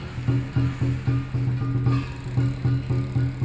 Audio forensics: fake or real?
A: real